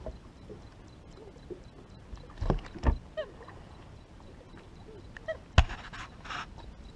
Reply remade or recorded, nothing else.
recorded